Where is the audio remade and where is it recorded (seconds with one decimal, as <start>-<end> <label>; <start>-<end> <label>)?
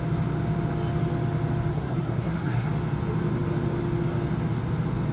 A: 0.0-1.7 recorded; 1.7-2.7 remade; 2.7-5.1 recorded